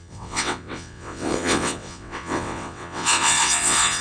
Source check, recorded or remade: remade